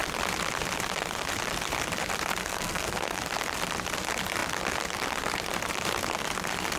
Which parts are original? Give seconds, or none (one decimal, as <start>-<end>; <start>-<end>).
0.0-2.4; 3.2-6.8